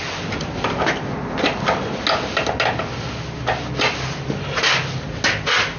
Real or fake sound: real